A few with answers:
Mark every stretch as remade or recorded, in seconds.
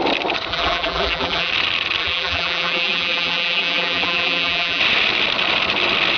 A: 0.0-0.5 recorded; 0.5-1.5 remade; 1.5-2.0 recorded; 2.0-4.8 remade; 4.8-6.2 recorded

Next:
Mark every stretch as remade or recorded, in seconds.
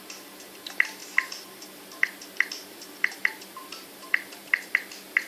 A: 0.0-3.6 recorded; 3.6-4.7 remade; 4.7-5.3 recorded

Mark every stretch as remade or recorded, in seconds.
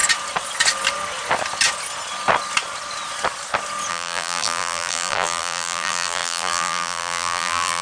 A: 0.0-3.9 recorded; 3.9-7.8 remade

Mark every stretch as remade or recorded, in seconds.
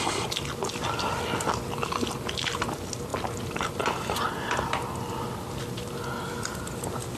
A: 0.0-7.2 recorded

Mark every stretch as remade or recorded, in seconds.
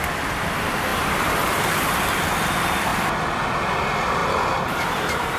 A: 0.0-2.9 remade; 2.9-3.6 recorded; 3.6-5.4 remade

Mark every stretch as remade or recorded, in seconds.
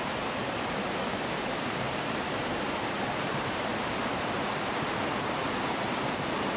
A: 0.0-1.1 recorded; 1.1-4.5 remade; 4.5-6.6 recorded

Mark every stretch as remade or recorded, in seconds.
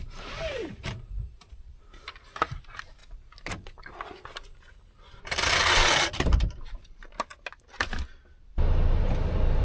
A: 0.0-3.0 remade; 3.0-5.2 recorded; 5.2-7.3 remade; 7.3-9.6 recorded